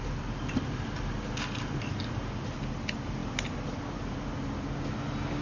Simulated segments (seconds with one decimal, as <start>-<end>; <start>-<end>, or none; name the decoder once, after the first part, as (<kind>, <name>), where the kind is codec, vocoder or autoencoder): none